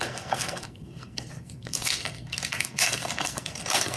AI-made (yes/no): yes